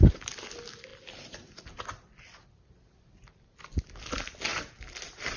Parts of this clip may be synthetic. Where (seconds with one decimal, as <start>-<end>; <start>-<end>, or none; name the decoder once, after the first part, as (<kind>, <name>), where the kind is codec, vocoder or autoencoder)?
none